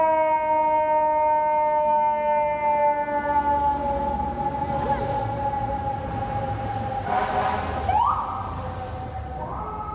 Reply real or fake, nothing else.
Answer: real